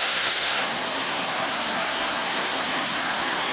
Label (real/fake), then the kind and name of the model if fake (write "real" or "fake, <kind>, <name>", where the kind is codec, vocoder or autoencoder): fake, codec, SNAC